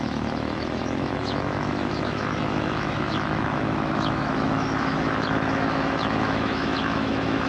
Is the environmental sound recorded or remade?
remade